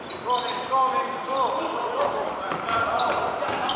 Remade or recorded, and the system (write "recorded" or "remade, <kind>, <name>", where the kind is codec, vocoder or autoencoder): recorded